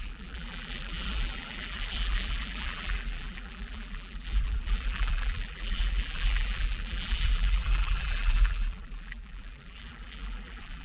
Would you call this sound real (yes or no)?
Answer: no